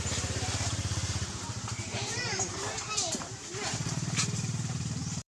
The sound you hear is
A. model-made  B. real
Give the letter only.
A